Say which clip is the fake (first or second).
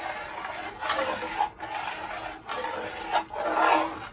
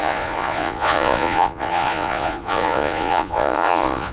second